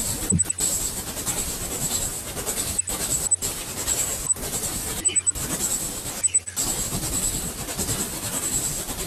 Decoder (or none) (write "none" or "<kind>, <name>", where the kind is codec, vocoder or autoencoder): none